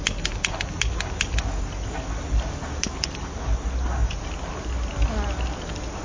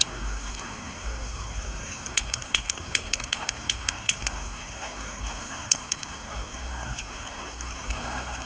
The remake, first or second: second